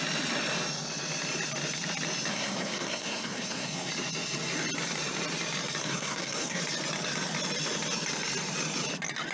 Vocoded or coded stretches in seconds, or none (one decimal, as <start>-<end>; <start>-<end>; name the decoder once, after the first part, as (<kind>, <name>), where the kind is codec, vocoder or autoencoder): 2.3-3.9 (codec, SNAC); 5.8-6.6